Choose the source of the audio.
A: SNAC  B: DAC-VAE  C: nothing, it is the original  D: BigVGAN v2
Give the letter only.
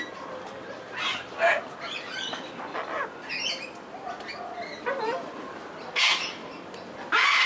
C